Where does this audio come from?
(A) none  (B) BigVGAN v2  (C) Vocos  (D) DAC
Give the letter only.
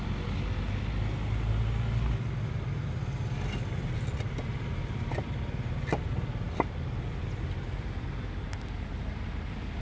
A